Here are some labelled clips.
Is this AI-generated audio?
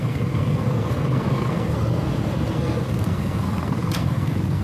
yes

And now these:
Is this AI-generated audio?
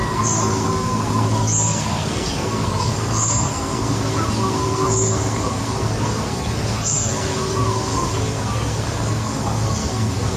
yes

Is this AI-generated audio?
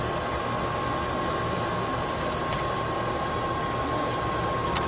no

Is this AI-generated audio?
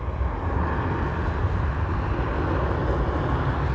no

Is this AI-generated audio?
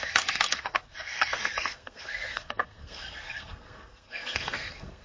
yes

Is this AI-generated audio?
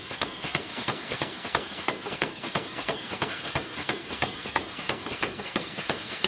yes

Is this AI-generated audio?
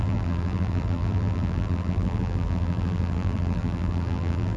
yes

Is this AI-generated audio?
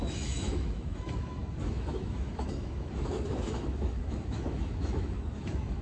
yes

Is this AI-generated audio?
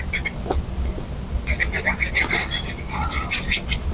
no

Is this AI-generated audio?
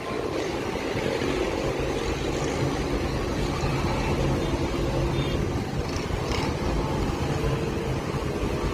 no